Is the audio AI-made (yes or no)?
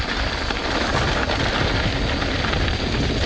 no